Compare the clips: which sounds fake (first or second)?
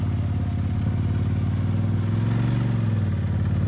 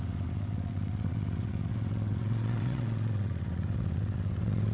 second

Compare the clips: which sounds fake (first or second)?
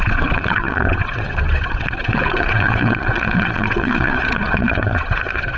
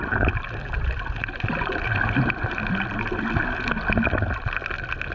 first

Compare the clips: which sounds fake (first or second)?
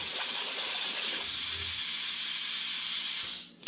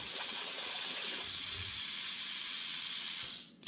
second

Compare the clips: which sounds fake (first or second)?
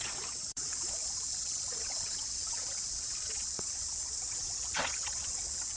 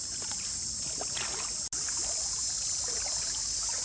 first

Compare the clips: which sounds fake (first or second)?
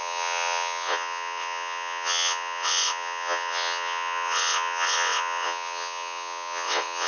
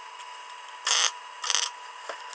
first